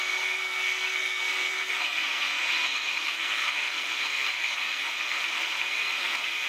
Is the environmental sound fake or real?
fake